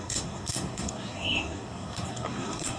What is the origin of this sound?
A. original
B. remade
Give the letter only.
B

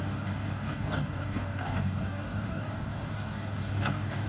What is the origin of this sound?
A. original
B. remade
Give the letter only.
B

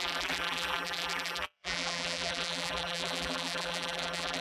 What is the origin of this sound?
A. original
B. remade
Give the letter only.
B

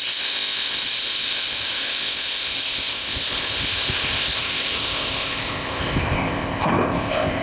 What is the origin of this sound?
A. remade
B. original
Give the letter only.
A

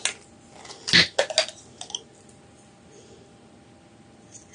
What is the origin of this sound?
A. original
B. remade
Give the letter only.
A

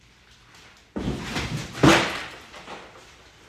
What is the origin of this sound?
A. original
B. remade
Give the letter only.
A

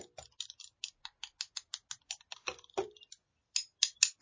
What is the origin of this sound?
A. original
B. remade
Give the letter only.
A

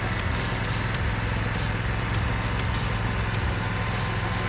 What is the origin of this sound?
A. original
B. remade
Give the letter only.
A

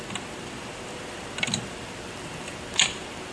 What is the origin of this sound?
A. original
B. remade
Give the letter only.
A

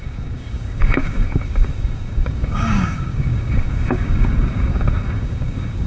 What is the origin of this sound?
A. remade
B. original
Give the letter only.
A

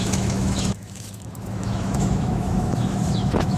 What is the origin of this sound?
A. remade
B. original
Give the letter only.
A